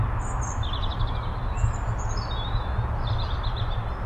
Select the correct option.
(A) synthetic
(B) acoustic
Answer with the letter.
B